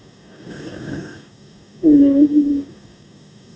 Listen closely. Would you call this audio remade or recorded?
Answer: remade